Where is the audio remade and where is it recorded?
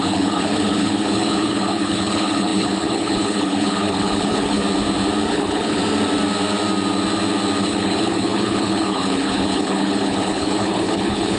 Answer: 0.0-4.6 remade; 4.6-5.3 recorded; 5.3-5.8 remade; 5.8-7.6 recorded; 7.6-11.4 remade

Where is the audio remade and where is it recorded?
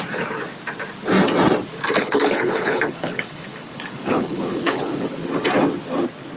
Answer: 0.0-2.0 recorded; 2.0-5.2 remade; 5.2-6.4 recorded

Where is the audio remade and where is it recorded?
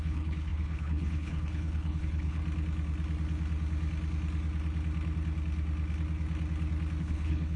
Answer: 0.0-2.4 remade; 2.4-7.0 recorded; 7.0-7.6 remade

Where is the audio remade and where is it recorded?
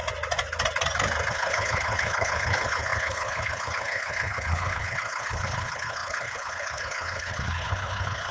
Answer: 0.0-1.3 recorded; 1.3-8.3 remade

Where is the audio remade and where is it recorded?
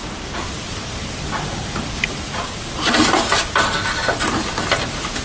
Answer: 0.0-5.2 recorded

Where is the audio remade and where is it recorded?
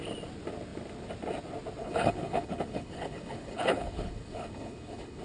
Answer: 0.0-1.8 recorded; 1.8-5.2 remade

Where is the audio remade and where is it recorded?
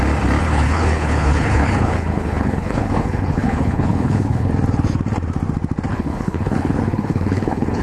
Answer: 0.0-0.4 recorded; 0.4-4.5 remade; 4.5-5.9 recorded; 5.9-7.8 remade